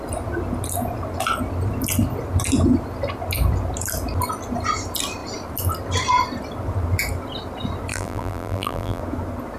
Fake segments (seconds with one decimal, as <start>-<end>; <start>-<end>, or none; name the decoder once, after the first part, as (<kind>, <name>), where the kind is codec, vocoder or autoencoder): 7.9-9.0 (vocoder, BigVGAN v2)